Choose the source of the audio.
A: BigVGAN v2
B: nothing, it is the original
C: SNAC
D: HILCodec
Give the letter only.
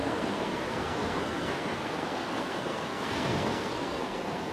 C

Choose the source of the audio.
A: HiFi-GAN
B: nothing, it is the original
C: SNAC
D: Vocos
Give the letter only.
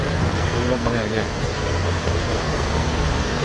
C